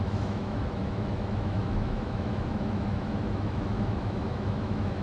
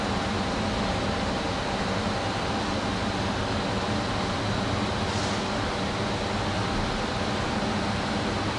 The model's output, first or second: first